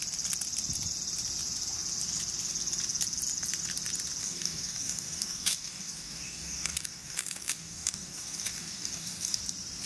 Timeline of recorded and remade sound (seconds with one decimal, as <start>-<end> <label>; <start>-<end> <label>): 0.0-4.2 recorded; 4.2-9.4 remade; 9.4-9.9 recorded